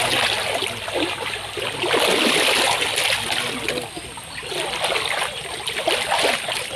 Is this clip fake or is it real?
real